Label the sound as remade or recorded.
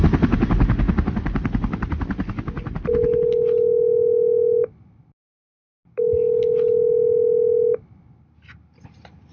recorded